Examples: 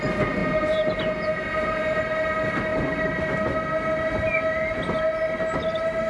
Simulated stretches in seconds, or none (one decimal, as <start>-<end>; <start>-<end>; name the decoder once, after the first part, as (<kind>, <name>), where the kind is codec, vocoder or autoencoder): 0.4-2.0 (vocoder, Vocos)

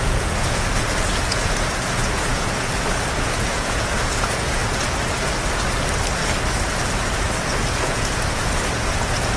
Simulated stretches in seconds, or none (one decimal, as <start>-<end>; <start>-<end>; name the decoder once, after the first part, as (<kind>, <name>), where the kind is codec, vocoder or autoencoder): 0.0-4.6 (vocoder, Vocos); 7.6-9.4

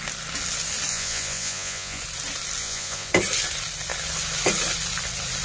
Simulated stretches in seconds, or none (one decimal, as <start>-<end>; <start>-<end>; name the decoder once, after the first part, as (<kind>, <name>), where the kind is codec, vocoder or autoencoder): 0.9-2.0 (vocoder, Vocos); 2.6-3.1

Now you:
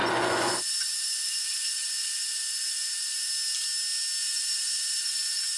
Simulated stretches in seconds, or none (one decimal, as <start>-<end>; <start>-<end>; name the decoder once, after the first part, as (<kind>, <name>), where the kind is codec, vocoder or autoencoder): 0.0-3.3 (vocoder, Vocos); 4.2-5.6

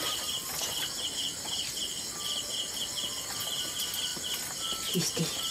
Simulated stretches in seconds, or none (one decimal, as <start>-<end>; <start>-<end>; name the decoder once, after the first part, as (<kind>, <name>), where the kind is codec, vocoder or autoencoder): none

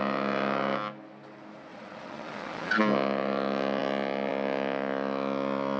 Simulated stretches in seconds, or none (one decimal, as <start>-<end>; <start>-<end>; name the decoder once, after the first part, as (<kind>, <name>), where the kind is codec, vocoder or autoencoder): 1.7-2.7 (vocoder, Vocos)

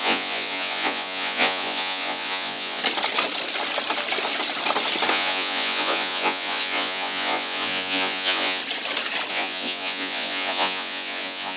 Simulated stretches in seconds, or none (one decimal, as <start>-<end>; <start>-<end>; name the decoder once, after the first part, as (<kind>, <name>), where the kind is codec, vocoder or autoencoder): 0.0-2.8 (vocoder, Vocos); 5.1-8.6; 9.3-11.6